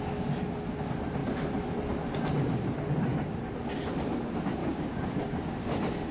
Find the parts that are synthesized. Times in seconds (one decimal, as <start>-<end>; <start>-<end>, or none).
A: 4.6-5.5